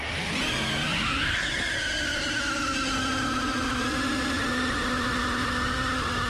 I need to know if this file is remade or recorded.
recorded